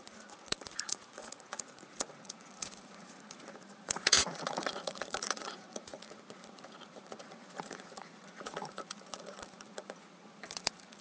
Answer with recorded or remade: remade